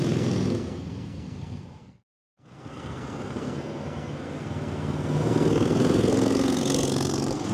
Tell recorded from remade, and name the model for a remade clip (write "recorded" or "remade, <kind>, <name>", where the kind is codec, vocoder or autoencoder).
remade, codec, SNAC